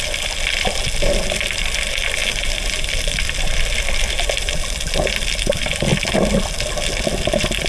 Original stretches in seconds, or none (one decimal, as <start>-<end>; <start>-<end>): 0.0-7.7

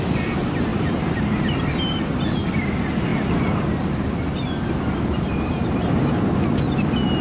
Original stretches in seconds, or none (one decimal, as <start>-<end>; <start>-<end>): 0.0-0.7; 1.6-3.1; 6.2-7.2

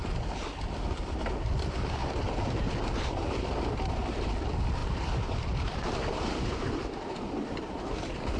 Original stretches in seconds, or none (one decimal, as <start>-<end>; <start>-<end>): 0.0-2.0; 4.3-4.8; 7.9-8.4

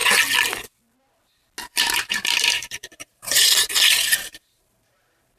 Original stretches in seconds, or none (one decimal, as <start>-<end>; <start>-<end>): 0.0-1.7

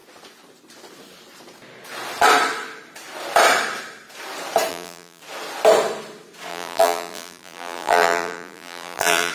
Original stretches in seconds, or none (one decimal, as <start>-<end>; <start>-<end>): 0.0-4.7; 5.2-6.5

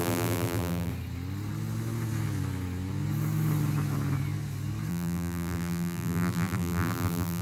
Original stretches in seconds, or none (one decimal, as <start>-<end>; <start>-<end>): 0.9-4.9

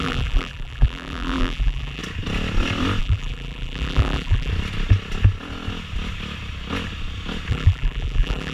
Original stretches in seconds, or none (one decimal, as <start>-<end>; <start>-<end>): 2.0-3.0; 4.5-7.5

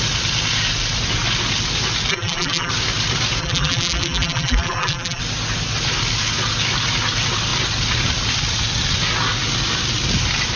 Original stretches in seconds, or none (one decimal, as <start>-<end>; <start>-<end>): 0.0-2.1; 2.7-3.4; 5.2-10.6